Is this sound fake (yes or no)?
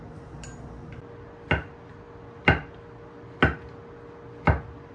no